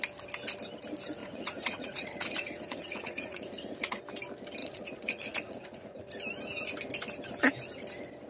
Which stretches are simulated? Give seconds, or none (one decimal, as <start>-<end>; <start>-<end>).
1.2-4.0; 4.6-6.0